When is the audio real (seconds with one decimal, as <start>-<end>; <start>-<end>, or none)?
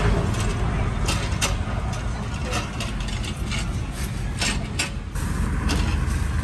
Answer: 0.0-6.4